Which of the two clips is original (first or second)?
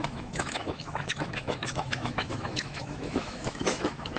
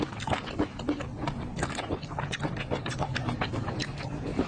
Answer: second